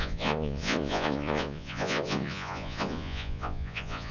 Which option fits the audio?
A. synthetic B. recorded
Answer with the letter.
A